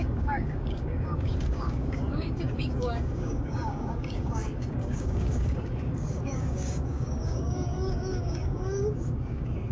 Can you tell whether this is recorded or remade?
remade